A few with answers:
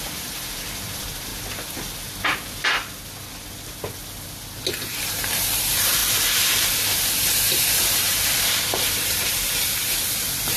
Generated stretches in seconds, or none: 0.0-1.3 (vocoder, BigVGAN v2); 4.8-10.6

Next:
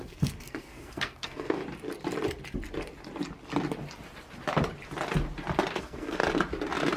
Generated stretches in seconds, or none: 0.0-1.6 (codec, SNAC); 5.8-6.2